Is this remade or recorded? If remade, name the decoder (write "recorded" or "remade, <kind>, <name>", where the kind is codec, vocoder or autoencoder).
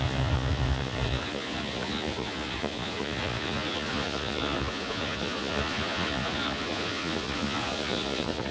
remade, vocoder, Vocos